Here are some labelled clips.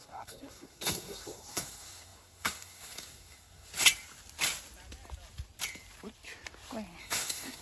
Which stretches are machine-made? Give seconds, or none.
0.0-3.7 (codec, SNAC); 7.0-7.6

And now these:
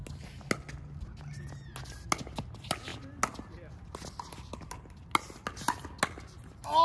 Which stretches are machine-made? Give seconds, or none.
none

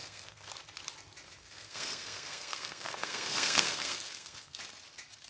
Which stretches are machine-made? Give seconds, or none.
0.0-0.5 (codec, SNAC); 1.4-4.6

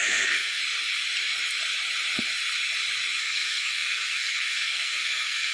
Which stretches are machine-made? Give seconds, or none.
0.0-0.6 (codec, SNAC); 3.2-5.5

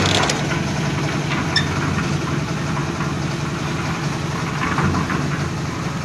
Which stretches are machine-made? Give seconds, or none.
none